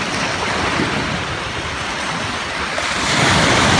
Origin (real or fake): fake